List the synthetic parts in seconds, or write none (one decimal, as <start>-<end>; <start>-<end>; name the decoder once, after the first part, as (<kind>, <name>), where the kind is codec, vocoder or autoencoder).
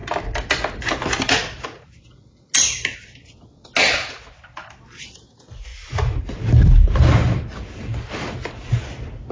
none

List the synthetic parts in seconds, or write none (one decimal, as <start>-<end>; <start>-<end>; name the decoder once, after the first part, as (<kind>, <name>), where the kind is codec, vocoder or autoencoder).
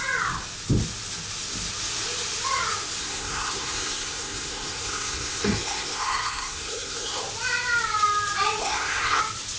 3.0-7.2 (codec, SNAC); 8.6-9.2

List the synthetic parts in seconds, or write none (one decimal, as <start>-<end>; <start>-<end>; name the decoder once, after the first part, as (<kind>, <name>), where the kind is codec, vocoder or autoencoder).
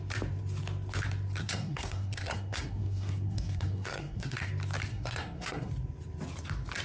1.4-4.5 (codec, SNAC); 4.9-5.7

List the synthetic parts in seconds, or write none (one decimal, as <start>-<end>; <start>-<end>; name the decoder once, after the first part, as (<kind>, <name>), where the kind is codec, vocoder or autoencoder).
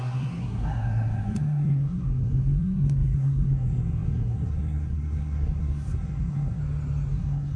0.0-6.6 (codec, SNAC); 7.1-7.6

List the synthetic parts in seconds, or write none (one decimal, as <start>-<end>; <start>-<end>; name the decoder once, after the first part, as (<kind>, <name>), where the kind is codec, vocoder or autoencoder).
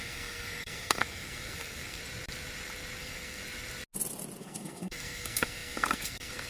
0.0-2.0 (codec, SNAC); 3.0-3.4; 4.4-6.5